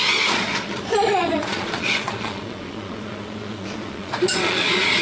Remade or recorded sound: remade